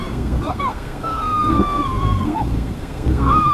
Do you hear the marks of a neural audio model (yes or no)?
yes